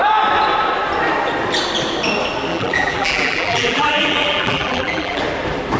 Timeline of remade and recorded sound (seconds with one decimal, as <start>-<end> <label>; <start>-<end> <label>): 0.0-2.5 recorded; 2.5-5.2 remade; 5.2-5.8 recorded